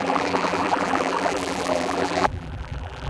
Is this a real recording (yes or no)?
no